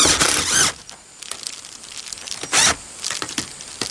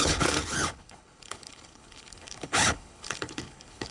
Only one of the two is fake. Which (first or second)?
second